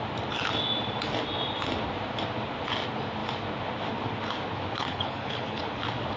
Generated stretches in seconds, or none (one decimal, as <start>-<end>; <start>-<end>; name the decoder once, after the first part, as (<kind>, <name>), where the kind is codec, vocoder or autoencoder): 4.7-5.6 (codec, HILCodec)